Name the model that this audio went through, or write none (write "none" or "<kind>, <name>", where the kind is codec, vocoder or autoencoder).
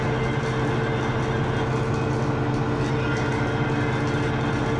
none